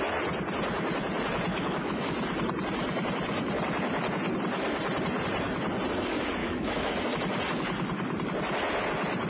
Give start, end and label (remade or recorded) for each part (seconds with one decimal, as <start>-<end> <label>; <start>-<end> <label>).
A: 0.0-1.5 recorded; 1.5-2.0 remade; 2.0-6.4 recorded; 6.4-6.9 remade; 6.9-9.3 recorded